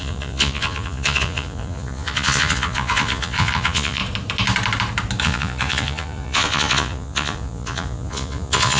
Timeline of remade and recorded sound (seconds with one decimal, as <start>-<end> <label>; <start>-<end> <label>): 0.0-4.0 remade; 4.0-5.2 recorded; 5.2-8.8 remade